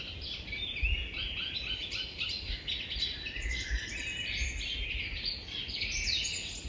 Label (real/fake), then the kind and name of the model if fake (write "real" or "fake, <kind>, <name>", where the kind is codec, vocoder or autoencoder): real